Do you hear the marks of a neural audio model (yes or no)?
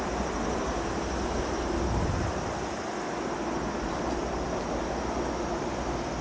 no